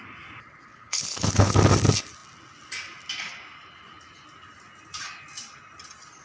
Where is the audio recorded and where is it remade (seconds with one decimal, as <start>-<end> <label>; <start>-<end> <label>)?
0.0-0.7 recorded; 0.7-1.5 remade; 1.5-6.2 recorded